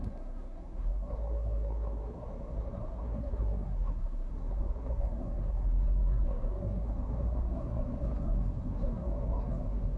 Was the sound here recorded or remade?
remade